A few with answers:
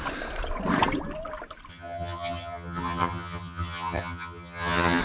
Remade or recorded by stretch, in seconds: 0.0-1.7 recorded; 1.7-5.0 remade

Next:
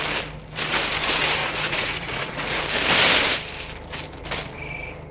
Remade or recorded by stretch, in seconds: 0.0-1.4 recorded; 1.4-2.6 remade; 2.6-5.1 recorded

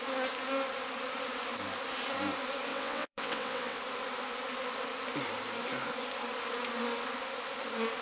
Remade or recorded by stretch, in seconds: 0.0-2.7 recorded; 2.7-3.8 remade; 3.8-8.0 recorded

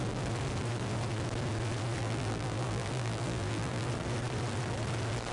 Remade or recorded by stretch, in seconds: 0.0-2.0 recorded; 2.0-3.9 remade; 3.9-5.3 recorded

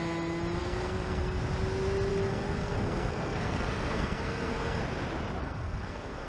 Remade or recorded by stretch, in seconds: 0.0-0.6 recorded; 0.6-1.4 remade; 1.4-2.1 recorded; 2.1-4.8 remade; 4.8-5.4 recorded; 5.4-6.3 remade

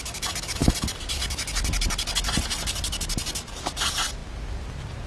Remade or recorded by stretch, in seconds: 0.0-5.1 recorded

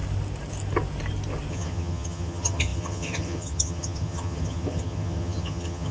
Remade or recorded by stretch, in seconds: 0.0-1.5 recorded; 1.5-5.9 remade

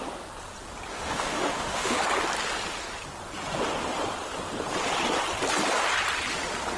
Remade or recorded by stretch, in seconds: 0.0-0.9 recorded; 0.9-2.0 remade; 2.0-6.8 recorded